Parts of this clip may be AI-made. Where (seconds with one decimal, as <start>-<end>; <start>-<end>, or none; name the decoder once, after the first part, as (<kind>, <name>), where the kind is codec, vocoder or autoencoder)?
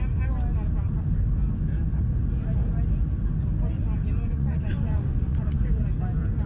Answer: 4.3-5.8 (vocoder, Vocos)